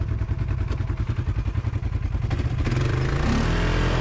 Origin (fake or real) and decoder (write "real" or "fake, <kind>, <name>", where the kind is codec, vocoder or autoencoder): real